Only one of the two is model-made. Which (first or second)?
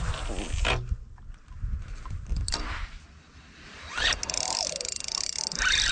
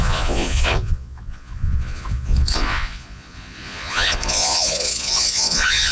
second